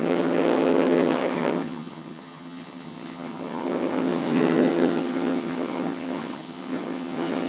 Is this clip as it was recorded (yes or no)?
no